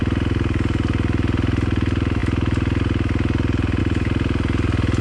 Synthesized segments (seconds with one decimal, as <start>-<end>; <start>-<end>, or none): none